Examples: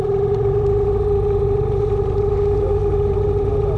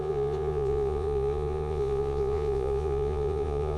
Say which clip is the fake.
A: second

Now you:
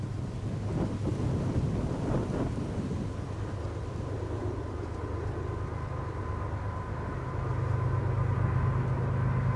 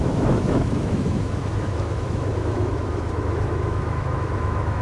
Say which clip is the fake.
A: second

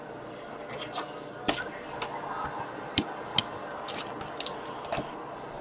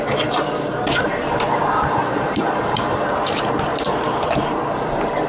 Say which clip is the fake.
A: second